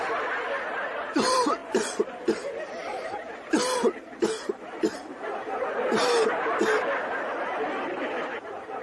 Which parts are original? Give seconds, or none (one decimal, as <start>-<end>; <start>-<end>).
0.0-8.8